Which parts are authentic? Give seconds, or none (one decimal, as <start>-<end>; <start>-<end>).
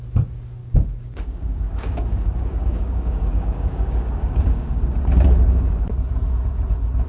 0.0-0.6; 4.9-7.1